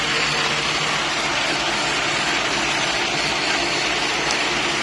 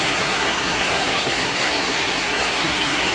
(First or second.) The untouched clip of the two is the first